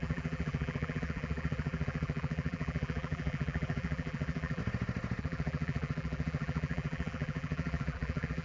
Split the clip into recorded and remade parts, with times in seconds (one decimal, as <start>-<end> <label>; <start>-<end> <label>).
0.0-4.6 remade; 4.6-5.2 recorded; 5.2-8.4 remade